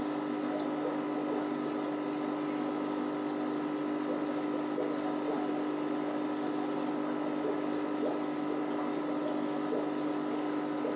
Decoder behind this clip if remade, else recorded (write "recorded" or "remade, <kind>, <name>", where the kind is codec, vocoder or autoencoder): recorded